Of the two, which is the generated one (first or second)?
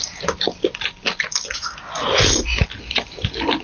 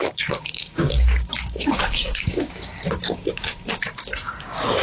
second